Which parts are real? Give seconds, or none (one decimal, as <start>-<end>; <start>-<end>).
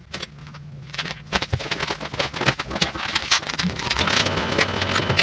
0.0-0.4; 1.7-3.2; 4.0-5.2